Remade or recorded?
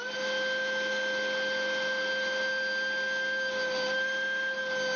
recorded